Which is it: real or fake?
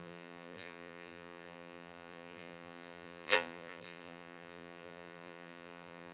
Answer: fake